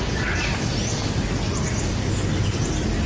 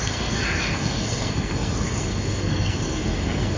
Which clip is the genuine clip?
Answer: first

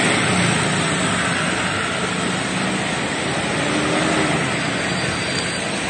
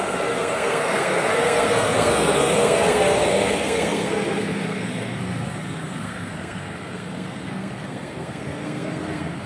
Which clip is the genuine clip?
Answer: first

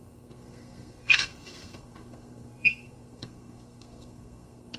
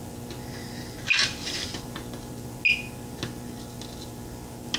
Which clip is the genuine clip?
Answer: second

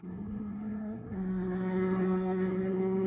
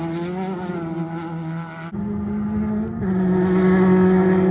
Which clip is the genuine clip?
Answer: second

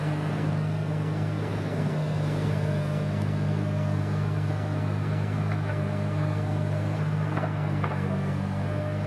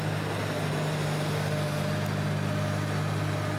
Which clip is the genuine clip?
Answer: second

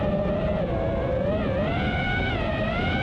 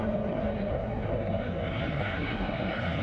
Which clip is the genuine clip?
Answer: first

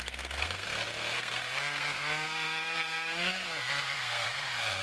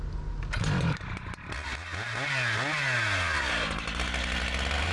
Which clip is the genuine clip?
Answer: second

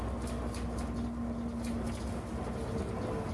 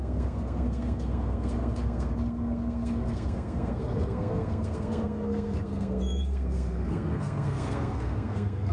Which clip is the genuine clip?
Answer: first